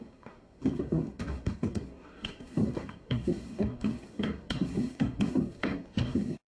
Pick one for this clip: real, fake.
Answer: fake